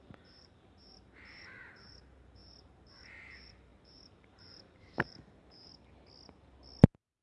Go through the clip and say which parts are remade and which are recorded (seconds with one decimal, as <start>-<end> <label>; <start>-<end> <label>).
0.0-5.7 remade; 5.7-7.2 recorded